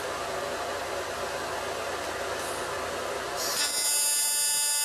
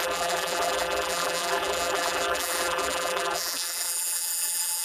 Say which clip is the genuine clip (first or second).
first